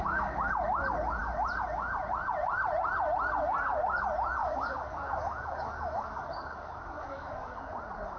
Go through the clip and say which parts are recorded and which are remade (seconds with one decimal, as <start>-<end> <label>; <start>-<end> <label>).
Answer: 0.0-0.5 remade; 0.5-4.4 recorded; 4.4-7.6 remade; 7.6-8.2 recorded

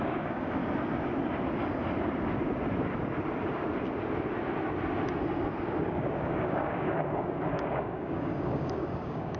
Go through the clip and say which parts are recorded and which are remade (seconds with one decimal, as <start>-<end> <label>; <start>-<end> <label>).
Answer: 0.0-0.6 remade; 0.6-5.8 recorded; 5.8-9.4 remade

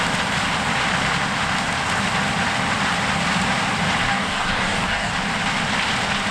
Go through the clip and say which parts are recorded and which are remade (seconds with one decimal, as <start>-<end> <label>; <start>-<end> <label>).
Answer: 0.0-4.1 recorded; 4.1-5.1 remade; 5.1-6.3 recorded

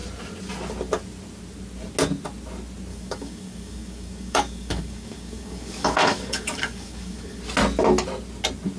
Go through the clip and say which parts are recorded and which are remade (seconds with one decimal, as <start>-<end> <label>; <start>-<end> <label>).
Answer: 0.0-2.9 recorded; 2.9-7.4 remade; 7.4-8.8 recorded

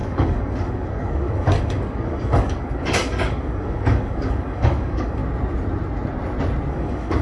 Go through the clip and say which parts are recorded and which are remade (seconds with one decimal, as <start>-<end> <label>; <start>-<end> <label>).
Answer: 0.0-5.2 remade; 5.2-6.7 recorded; 6.7-7.2 remade

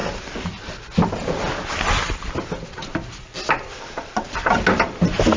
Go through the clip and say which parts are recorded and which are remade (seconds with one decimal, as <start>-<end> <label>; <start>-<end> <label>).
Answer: 0.0-5.4 recorded